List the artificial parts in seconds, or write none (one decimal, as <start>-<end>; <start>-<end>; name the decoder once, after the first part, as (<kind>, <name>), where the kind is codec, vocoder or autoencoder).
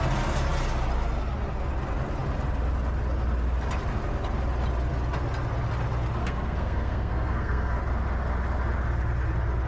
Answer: 6.2-7.8 (codec, SNAC)